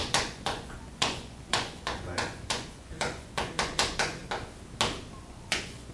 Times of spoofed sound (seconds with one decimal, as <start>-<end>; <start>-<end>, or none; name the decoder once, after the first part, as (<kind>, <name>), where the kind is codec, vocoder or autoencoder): 0.0-4.2 (vocoder, Vocos); 5.2-5.9